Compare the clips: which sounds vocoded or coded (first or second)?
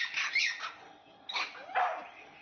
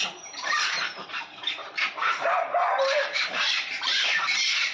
second